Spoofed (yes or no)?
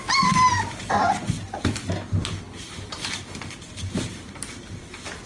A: yes